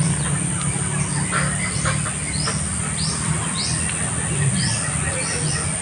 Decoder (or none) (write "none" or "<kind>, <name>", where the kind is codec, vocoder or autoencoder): none